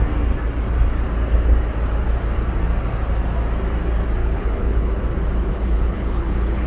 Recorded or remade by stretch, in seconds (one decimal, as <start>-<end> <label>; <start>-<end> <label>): 0.0-4.2 recorded; 4.2-4.9 remade; 4.9-5.5 recorded; 5.5-6.7 remade